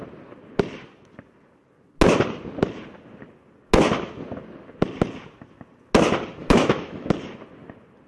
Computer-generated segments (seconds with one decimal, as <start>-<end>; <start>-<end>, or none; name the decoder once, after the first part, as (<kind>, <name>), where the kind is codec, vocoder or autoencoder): 6.4-7.1 (autoencoder, DAC-VAE)